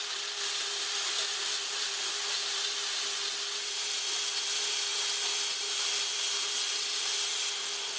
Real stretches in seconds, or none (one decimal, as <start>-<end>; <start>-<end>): 4.9-5.6